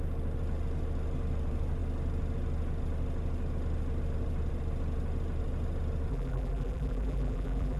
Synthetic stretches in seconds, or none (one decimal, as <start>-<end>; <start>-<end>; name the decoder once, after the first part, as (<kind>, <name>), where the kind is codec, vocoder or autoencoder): 6.1-7.8 (vocoder, BigVGAN v2)